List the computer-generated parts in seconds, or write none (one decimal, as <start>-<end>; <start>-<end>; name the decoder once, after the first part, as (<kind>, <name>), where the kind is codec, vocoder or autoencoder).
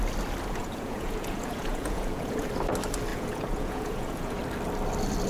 0.6-2.5 (vocoder, Vocos); 3.1-4.4